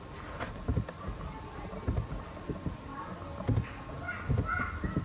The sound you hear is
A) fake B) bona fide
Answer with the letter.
B